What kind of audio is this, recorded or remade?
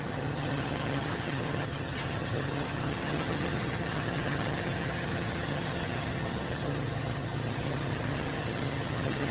remade